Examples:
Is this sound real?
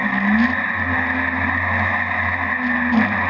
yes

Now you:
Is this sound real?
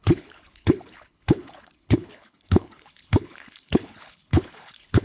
no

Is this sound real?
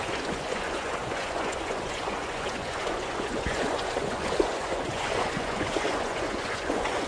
no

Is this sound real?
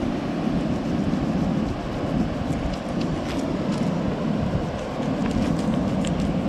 yes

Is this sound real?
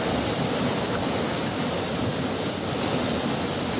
yes